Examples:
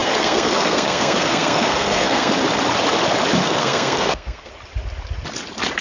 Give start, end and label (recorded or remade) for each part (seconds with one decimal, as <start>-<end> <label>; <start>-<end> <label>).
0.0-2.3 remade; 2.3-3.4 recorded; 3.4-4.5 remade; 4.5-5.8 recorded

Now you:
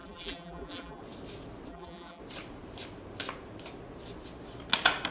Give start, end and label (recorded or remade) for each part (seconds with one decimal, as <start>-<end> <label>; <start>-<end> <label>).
0.0-1.0 remade; 1.0-1.7 recorded; 1.7-2.2 remade; 2.2-5.1 recorded

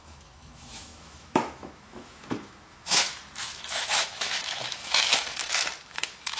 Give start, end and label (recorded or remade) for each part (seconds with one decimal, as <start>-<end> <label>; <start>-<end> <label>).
0.0-6.4 remade

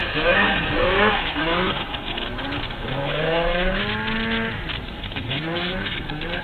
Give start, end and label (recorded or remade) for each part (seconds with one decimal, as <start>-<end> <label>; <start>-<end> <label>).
0.0-3.8 remade; 3.8-4.8 recorded; 4.8-6.4 remade

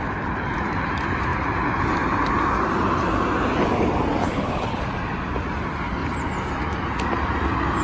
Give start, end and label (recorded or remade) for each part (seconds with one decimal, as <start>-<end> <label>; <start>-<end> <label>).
0.0-4.2 recorded; 4.2-4.8 remade; 4.8-7.8 recorded

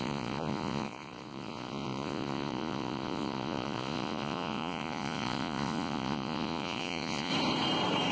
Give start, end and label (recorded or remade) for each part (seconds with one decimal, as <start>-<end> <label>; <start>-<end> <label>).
0.0-7.3 remade; 7.3-8.1 recorded